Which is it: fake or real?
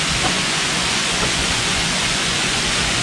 fake